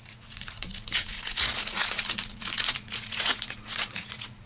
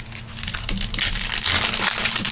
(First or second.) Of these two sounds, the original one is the second